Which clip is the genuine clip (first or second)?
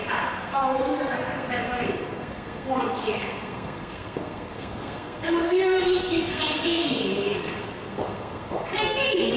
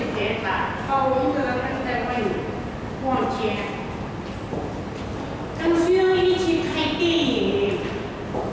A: second